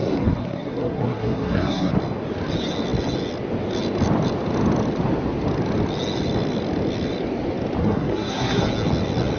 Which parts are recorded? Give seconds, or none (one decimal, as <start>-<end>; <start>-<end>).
1.9-7.8; 8.6-9.4